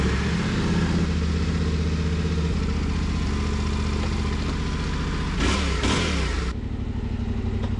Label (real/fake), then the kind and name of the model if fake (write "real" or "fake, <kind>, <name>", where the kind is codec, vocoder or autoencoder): real